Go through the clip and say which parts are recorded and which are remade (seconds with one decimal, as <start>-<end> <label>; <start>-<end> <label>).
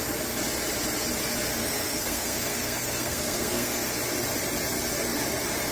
0.0-1.6 recorded; 1.6-3.9 remade; 3.9-5.7 recorded